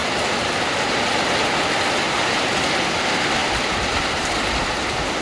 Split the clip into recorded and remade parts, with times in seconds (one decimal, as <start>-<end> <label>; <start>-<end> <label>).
0.0-5.2 recorded